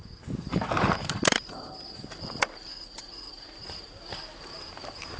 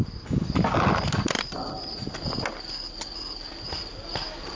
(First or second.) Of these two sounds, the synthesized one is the first